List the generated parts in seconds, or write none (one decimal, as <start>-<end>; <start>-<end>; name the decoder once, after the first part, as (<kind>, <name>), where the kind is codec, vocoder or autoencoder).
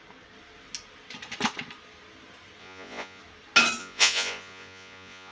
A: 2.6-3.2 (vocoder, Vocos); 3.8-5.3